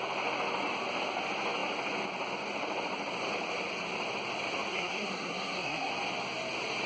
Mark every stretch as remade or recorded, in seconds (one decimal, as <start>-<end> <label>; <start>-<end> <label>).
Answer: 0.0-4.7 recorded; 4.7-5.9 remade; 5.9-6.9 recorded